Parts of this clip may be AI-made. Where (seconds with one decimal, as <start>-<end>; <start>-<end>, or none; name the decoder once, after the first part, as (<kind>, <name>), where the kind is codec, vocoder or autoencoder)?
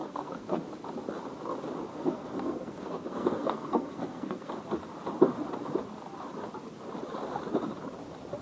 0.0-0.6 (codec, SNAC); 1.9-4.5